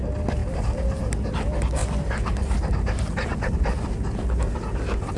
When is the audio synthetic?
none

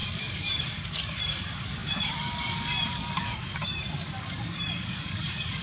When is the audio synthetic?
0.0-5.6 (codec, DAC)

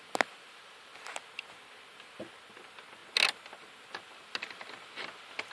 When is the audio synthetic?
none